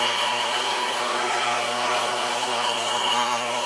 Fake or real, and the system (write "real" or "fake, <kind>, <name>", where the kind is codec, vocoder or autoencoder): fake, codec, SNAC